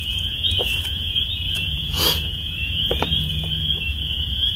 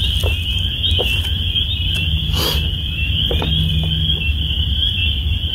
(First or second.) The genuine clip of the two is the second